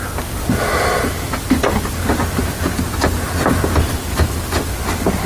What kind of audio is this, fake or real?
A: real